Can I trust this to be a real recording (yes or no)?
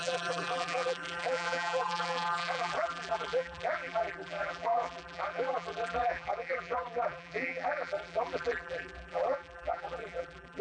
no